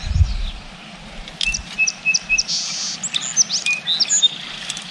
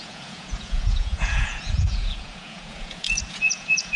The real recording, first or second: first